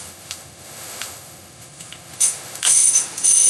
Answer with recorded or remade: remade